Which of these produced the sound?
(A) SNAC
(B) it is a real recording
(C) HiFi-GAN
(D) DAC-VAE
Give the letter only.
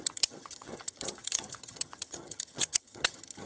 C